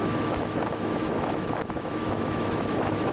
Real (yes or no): no